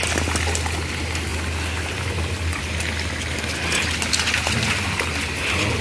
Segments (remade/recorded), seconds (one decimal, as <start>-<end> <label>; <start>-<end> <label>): 0.0-5.8 recorded